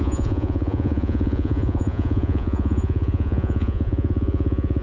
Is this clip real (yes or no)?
no